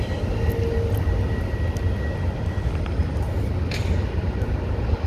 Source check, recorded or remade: recorded